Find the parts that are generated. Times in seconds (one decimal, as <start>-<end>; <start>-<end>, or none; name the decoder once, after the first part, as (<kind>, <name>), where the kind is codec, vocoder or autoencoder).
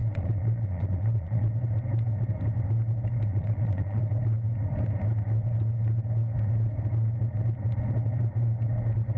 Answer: 0.0-1.5 (vocoder, Vocos); 3.3-4.0